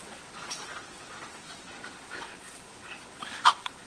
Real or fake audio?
fake